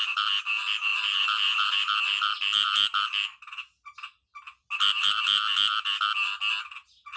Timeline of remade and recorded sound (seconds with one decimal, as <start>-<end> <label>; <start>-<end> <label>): 0.0-7.2 recorded